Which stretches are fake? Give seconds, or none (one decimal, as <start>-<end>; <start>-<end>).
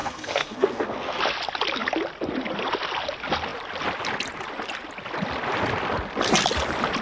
0.0-1.2